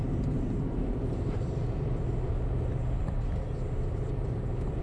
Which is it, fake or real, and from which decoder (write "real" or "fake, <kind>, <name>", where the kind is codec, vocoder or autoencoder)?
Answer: real